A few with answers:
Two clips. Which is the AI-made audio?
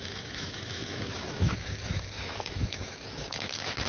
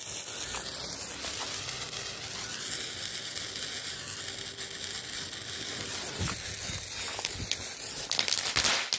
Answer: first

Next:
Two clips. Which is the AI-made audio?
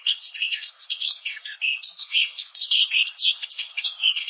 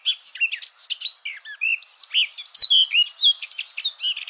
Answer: first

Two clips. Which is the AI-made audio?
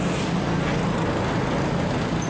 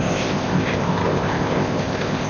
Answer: second